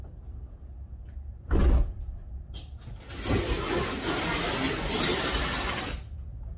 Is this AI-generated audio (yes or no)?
no